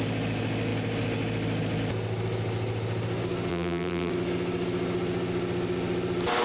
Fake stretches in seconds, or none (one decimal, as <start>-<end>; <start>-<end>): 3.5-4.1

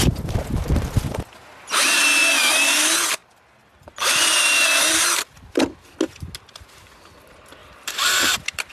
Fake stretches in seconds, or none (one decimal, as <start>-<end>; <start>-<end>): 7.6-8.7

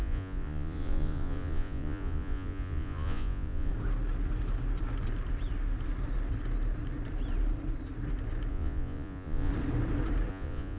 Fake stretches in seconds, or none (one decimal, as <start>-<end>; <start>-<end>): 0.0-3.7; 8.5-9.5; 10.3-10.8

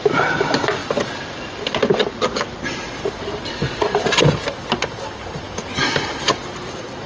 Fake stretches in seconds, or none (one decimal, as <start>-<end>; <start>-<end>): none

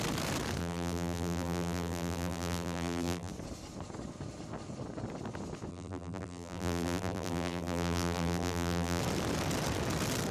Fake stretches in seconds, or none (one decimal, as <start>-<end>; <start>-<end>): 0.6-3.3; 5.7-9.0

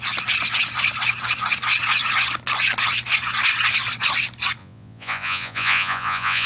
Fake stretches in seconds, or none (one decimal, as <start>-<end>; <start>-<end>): 4.6-6.5